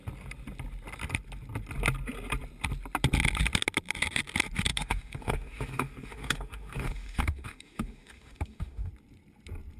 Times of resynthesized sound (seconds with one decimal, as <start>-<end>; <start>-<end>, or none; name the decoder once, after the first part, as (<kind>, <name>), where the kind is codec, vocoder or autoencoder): 4.7-8.9 (autoencoder, DAC-VAE)